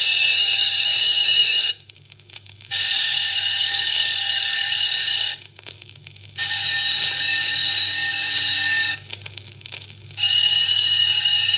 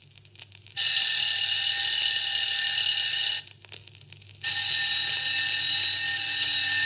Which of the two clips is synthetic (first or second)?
first